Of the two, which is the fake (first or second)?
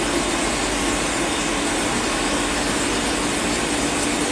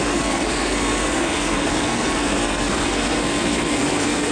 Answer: second